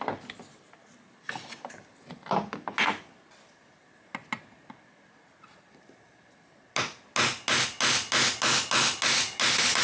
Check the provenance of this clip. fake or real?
real